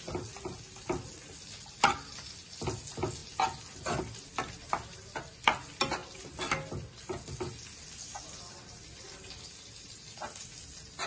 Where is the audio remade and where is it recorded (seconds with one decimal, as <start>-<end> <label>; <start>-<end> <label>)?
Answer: 0.0-11.1 recorded